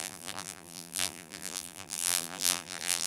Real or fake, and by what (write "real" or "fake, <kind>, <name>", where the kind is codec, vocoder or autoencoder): fake, vocoder, BigVGAN v2